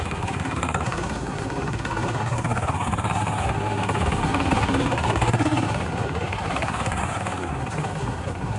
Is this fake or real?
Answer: fake